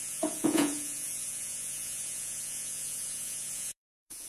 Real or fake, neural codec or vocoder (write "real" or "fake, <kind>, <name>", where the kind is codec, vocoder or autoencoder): fake, vocoder, Vocos